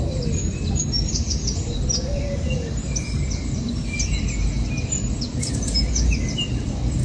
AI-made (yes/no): no